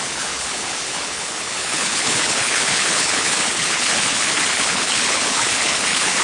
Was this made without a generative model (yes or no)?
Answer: no